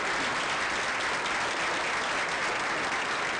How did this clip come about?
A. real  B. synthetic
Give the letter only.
A